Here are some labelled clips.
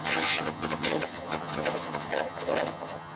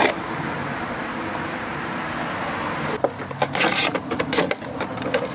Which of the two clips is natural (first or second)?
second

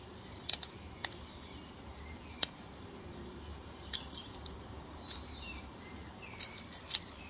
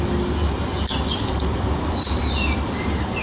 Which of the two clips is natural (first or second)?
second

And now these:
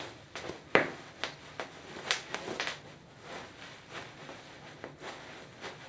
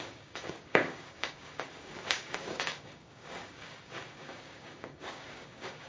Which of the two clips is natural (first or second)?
first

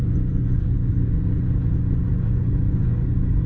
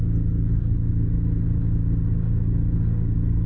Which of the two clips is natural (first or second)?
second